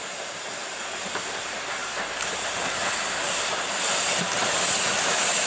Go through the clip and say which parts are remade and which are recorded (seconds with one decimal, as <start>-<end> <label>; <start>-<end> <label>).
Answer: 0.0-5.5 recorded